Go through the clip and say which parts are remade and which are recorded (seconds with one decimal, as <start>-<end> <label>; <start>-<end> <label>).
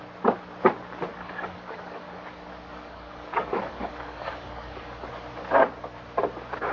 0.0-1.1 recorded; 1.1-5.1 remade; 5.1-6.7 recorded